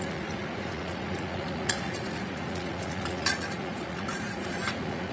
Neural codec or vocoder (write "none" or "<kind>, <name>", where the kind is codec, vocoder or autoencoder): vocoder, Vocos